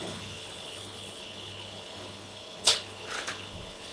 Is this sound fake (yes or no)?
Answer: yes